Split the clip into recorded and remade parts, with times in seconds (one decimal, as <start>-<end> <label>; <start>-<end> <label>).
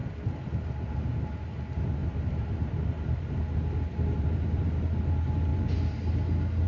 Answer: 0.0-0.9 remade; 0.9-2.0 recorded; 2.0-4.8 remade; 4.8-5.5 recorded; 5.5-6.1 remade; 6.1-6.7 recorded